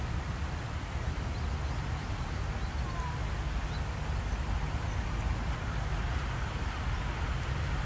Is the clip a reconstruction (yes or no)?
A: no